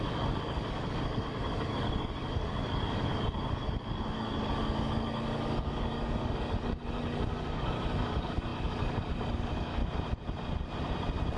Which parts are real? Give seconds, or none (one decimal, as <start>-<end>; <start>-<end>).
9.8-11.4